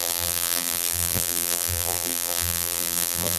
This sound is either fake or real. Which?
fake